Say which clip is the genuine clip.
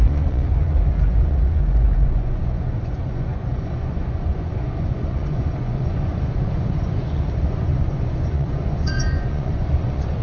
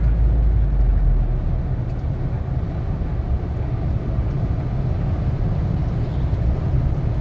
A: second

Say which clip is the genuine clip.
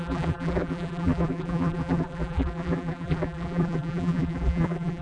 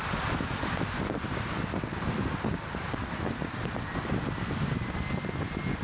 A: second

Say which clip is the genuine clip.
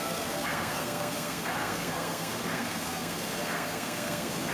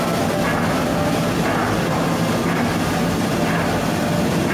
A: second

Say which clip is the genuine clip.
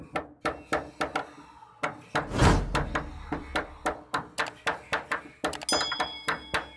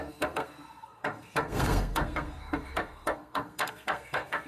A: first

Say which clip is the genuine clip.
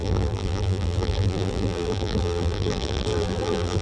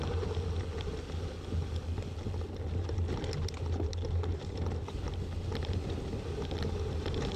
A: second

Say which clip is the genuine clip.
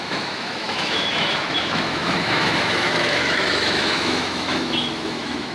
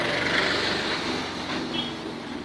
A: second